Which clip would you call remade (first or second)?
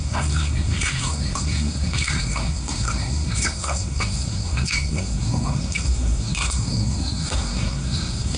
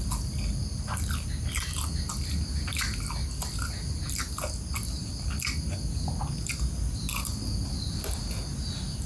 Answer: first